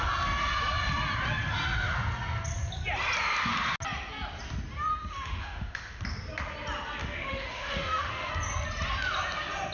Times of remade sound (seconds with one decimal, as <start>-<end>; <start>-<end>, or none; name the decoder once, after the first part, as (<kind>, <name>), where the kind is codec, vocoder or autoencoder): 4.9-6.0 (autoencoder, DAC-VAE); 7.0-8.3